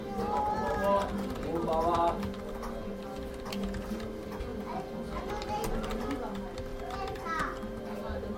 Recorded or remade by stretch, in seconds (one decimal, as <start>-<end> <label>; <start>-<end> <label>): 0.0-8.4 recorded